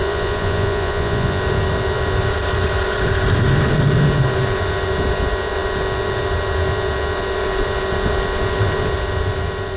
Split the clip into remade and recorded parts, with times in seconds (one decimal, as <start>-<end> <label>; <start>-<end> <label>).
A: 0.0-1.4 remade; 1.4-9.8 recorded